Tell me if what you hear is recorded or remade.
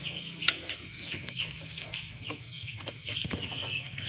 remade